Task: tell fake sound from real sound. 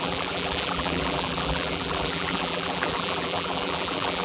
fake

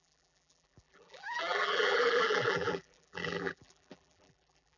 fake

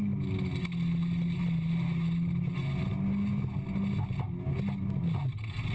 real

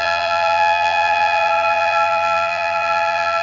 fake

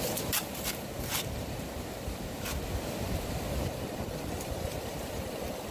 fake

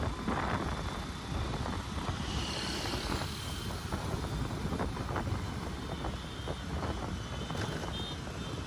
real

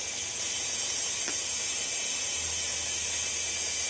real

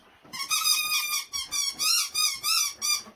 real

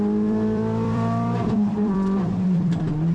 fake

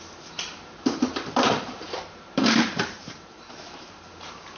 fake